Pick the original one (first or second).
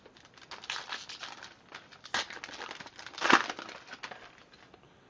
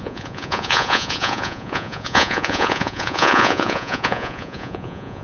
first